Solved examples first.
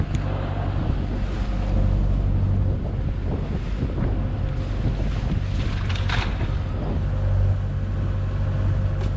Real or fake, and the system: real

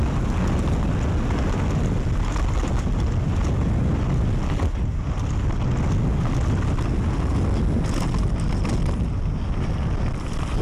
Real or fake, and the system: real